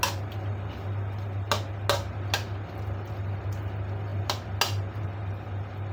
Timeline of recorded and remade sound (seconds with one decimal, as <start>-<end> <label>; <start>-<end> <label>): 0.0-5.9 recorded